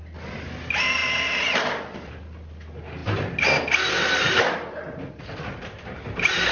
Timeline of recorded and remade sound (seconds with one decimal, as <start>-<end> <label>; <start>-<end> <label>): 0.0-6.5 recorded